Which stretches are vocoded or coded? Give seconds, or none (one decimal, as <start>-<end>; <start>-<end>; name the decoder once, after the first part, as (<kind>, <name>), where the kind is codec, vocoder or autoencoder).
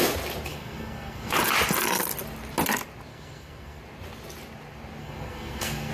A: 0.5-1.3 (codec, SNAC); 3.1-3.8; 5.0-5.9